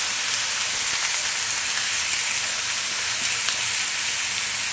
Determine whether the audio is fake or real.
real